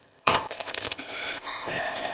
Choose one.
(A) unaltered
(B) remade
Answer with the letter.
B